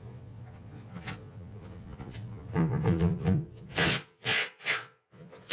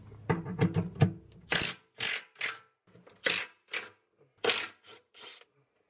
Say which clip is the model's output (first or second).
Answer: first